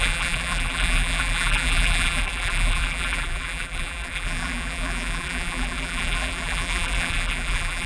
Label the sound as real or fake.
fake